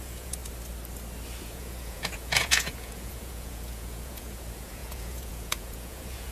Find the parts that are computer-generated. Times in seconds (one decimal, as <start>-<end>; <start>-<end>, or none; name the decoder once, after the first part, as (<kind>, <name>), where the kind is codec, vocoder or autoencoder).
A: 0.0-0.4 (vocoder, Vocos); 1.4-6.3